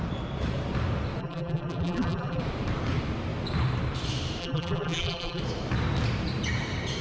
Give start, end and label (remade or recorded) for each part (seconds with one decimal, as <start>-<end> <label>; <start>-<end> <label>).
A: 0.0-1.2 recorded; 1.2-2.4 remade; 2.4-4.4 recorded; 4.4-5.4 remade; 5.4-7.0 recorded